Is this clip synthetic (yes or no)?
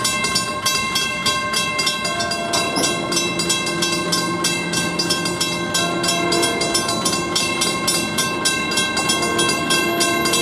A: no